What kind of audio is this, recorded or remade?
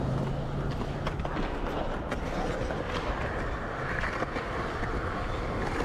recorded